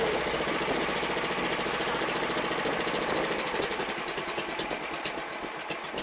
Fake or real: real